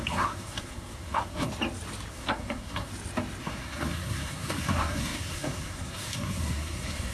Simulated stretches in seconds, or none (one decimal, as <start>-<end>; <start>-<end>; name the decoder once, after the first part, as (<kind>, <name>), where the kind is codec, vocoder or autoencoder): 0.0-1.5 (codec, SNAC); 2.1-2.9; 3.4-7.1